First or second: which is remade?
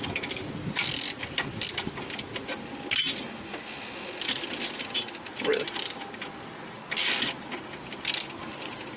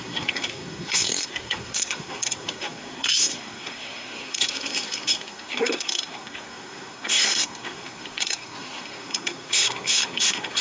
second